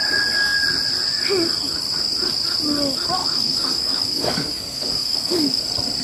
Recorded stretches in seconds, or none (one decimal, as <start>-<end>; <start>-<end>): 0.0-3.2; 5.6-6.0